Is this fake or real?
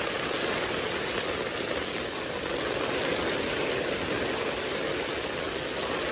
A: real